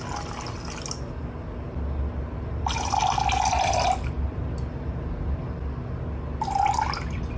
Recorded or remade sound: recorded